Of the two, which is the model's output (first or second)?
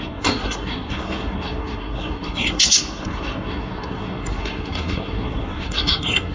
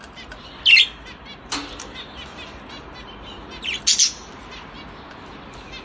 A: first